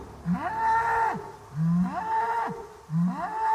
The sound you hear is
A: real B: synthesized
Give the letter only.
A